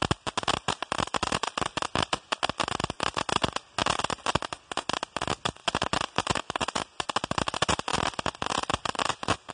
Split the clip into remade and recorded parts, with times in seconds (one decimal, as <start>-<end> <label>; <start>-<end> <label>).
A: 0.0-9.5 recorded